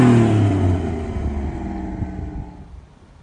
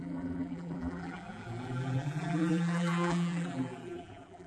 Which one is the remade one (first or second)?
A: second